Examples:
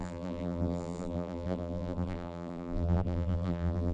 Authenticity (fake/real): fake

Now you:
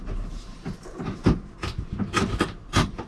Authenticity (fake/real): real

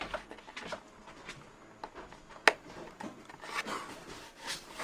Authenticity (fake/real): real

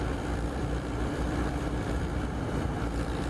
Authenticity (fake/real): fake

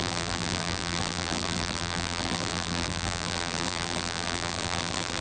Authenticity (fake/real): fake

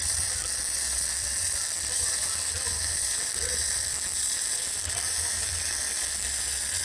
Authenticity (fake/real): fake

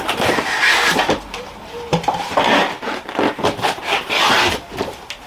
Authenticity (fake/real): fake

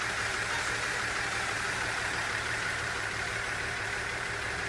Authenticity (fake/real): fake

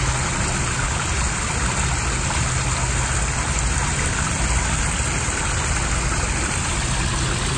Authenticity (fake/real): real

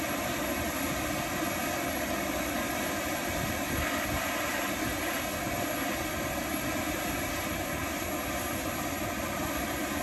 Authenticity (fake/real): real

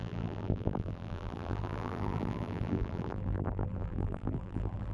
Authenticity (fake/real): fake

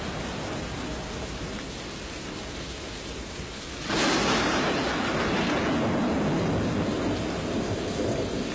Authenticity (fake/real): real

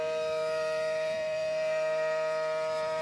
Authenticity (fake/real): fake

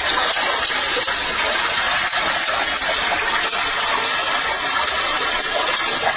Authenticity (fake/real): real